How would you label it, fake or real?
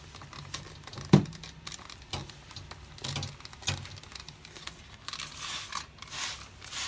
real